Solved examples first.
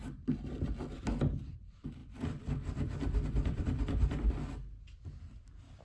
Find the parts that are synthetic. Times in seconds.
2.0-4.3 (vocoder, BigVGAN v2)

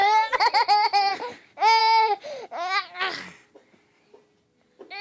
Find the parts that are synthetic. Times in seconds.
0.0-1.1 (vocoder, BigVGAN v2)

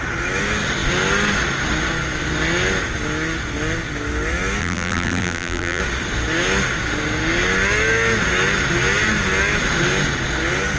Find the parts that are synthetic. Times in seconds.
4.6-5.8 (vocoder, BigVGAN v2)